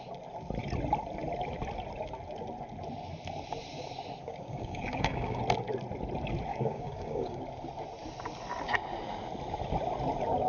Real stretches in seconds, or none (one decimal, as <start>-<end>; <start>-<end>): 0.0-4.2; 5.4-6.5; 7.4-10.5